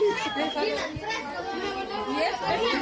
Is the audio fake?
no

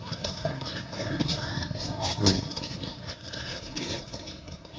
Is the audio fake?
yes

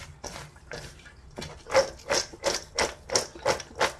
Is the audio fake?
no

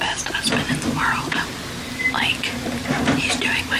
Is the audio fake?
no